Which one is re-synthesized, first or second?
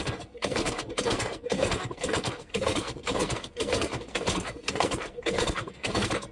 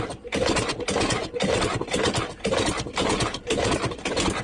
first